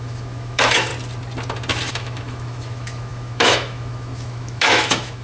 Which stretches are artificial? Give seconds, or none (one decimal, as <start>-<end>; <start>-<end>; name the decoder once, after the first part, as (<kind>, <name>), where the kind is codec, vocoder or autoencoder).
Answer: 0.0-0.9 (autoencoder, DAC-VAE); 1.9-5.2